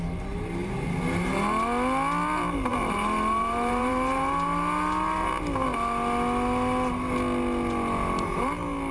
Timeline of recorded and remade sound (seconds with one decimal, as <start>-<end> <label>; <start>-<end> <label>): 0.0-2.7 recorded; 2.7-5.3 remade; 5.3-8.9 recorded